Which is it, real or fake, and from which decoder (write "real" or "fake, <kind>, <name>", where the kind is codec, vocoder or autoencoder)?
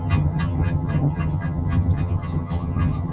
fake, vocoder, HiFi-GAN